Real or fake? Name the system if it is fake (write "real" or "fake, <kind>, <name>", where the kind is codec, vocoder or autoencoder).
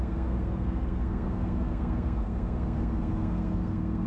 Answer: fake, codec, SNAC